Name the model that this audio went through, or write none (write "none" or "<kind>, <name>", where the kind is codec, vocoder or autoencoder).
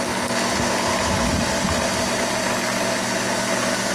none